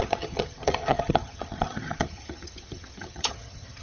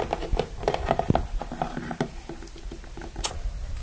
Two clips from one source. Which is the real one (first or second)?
second